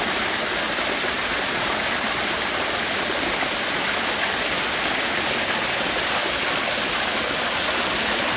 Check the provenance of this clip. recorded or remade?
recorded